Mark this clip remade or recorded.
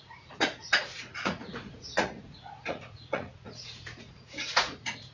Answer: remade